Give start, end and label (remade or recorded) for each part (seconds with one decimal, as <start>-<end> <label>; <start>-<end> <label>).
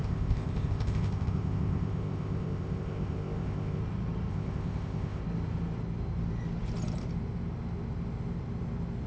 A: 0.0-3.8 remade; 3.8-4.3 recorded; 4.3-5.2 remade; 5.2-9.1 recorded